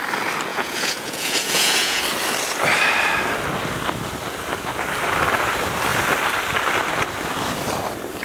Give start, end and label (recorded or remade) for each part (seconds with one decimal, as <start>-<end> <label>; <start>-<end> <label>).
0.0-0.5 recorded; 0.5-2.0 remade; 2.0-8.2 recorded